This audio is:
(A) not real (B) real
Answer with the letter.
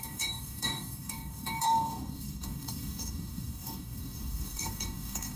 A